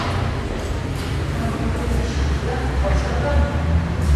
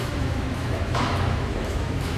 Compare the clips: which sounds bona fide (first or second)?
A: first